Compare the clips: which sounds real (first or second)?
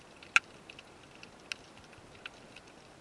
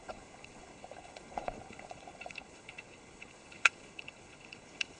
first